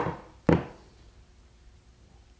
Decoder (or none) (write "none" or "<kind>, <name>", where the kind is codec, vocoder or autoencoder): none